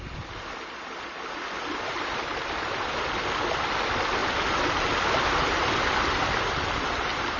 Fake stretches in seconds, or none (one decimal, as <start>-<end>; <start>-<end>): none